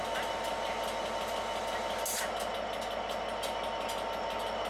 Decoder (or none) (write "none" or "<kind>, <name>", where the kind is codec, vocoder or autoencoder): none